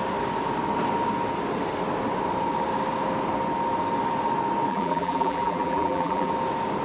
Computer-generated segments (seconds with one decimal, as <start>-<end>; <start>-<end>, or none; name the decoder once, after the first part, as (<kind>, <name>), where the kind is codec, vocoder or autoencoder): 4.7-6.3 (vocoder, BigVGAN v2)